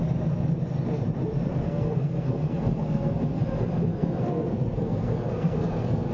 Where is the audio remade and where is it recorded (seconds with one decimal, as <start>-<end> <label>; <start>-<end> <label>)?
0.0-1.5 recorded; 1.5-3.4 remade; 3.4-3.9 recorded; 3.9-6.1 remade